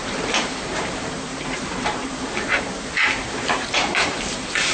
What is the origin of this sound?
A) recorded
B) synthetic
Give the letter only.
B